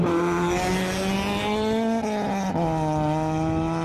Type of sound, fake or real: real